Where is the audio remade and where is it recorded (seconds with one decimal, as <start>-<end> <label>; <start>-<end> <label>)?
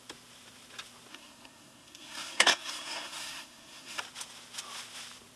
0.0-1.1 recorded; 1.1-4.0 remade; 4.0-5.4 recorded